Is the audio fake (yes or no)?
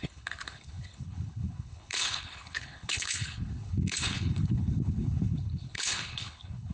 yes